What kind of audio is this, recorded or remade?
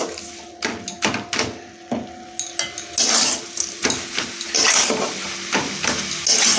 recorded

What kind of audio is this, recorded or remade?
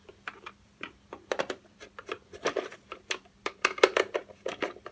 remade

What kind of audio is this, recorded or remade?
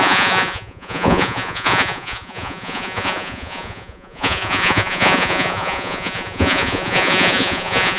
remade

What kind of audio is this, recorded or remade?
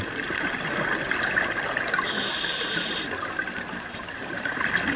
recorded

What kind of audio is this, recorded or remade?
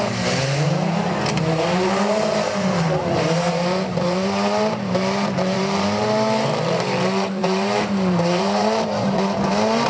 remade